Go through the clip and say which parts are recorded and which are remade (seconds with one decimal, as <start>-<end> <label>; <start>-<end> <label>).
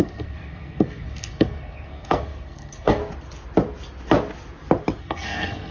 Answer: 0.0-3.0 remade; 3.0-5.0 recorded; 5.0-5.7 remade